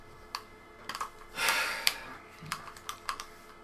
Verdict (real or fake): real